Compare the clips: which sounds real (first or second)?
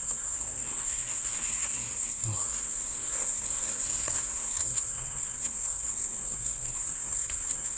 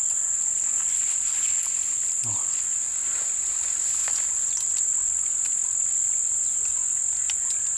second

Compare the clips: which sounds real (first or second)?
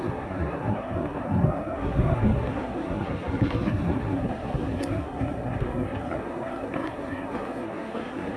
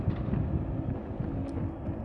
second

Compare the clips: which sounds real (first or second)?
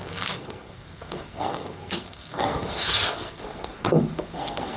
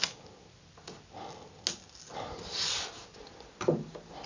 second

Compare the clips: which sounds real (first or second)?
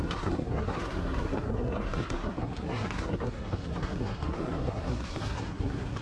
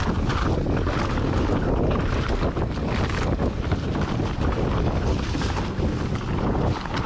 second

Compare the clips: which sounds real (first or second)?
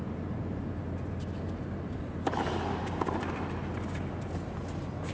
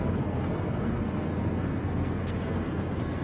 first